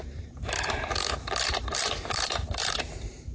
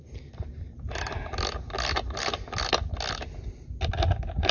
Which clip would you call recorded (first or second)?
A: second